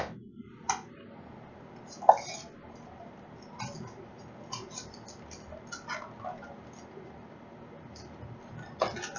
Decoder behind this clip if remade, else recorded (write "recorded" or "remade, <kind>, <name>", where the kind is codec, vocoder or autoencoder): recorded